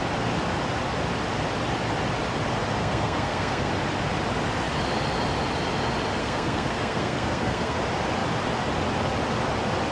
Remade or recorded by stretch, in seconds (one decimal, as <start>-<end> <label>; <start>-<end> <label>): 0.0-2.8 recorded; 2.8-3.7 remade; 3.7-6.2 recorded; 6.2-7.8 remade; 7.8-9.9 recorded